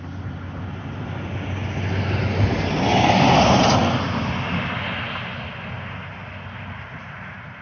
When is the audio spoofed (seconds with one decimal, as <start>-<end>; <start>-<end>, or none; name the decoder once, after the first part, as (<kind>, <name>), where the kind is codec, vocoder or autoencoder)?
none